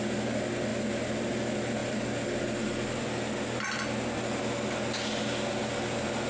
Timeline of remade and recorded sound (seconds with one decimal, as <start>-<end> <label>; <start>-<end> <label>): 0.0-6.3 recorded